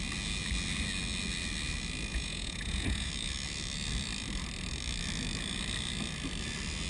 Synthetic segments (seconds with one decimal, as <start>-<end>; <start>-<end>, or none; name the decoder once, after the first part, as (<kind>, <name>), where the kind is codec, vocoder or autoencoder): 2.1-3.1 (vocoder, Vocos)